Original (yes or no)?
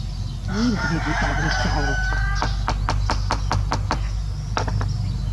yes